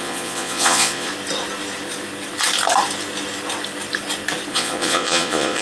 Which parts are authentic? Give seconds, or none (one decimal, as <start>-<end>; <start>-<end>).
1.1-4.5